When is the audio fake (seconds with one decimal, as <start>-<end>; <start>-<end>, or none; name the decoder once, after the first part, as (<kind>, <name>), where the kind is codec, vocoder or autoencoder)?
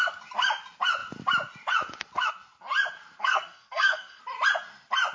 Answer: 3.2-4.2 (codec, SNAC)